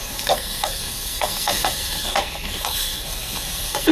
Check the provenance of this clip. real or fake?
fake